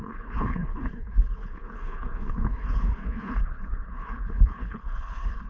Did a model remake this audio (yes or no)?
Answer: yes